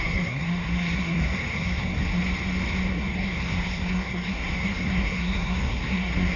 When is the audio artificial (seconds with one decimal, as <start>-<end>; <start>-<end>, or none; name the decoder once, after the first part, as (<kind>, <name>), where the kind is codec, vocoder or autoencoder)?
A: 0.0-2.2 (codec, SNAC); 2.9-6.4